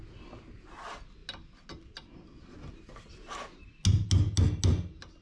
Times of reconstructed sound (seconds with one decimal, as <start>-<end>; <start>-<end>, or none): none